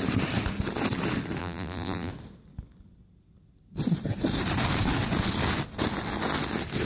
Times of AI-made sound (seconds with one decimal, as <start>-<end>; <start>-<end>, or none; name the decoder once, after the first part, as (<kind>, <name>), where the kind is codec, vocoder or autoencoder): 1.4-2.1 (vocoder, BigVGAN v2)